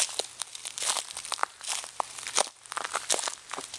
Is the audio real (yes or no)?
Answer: yes